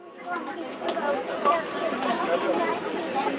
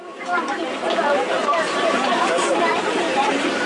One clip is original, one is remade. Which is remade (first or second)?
second